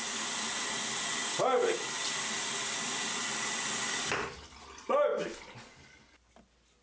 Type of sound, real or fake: real